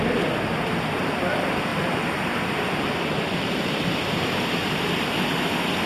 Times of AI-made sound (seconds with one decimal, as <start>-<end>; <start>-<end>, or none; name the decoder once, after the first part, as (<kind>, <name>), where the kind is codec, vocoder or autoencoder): none